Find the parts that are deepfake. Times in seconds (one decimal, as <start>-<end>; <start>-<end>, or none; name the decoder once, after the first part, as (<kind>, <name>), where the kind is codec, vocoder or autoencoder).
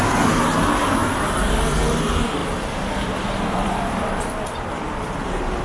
none